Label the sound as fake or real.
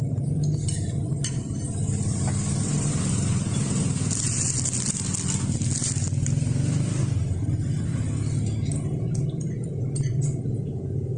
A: real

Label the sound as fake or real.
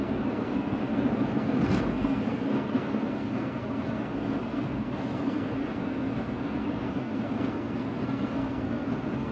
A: fake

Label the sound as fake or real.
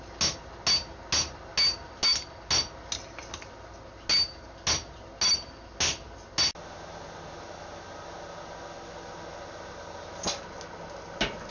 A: real